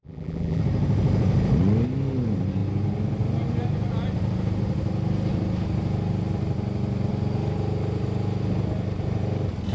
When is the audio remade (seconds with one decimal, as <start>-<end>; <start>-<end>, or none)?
0.0-0.6